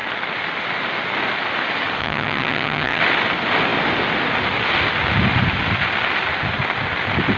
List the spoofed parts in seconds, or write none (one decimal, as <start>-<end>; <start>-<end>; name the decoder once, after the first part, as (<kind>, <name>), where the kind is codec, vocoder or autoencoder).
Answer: 2.0-3.0 (vocoder, HiFi-GAN)